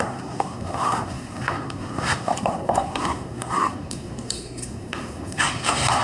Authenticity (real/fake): fake